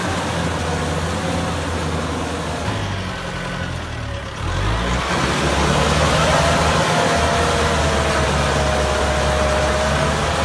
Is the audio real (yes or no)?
yes